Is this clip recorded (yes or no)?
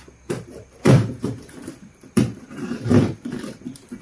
no